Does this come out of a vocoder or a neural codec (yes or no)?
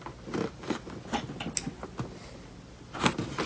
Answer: no